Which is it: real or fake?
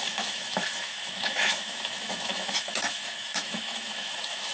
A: fake